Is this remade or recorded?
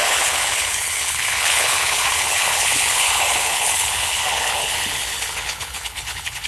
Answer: remade